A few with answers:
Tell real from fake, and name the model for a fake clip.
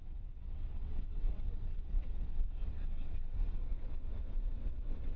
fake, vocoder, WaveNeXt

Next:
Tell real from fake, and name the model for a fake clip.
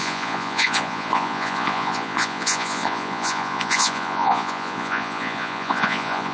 fake, vocoder, Vocos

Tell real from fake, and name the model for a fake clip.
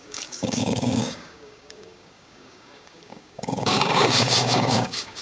fake, codec, DAC